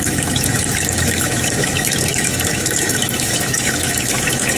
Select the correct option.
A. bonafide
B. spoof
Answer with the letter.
B